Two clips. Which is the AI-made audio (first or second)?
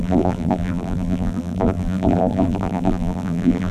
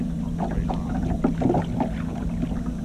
first